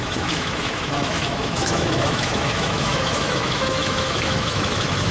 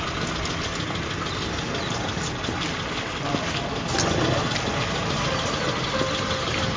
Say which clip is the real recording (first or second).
second